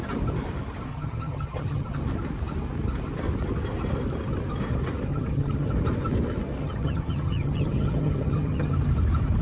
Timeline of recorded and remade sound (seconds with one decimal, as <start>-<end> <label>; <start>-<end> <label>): 0.0-0.9 recorded; 0.9-2.0 remade; 2.0-5.1 recorded; 5.1-5.7 remade; 5.7-6.6 recorded; 6.6-8.7 remade; 8.7-9.4 recorded